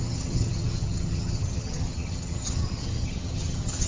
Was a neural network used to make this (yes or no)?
yes